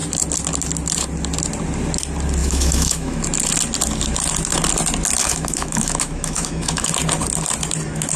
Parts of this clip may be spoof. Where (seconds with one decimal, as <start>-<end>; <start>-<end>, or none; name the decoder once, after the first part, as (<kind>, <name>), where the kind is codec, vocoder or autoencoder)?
2.4-3.2 (autoencoder, DAC-VAE); 5.2-6.9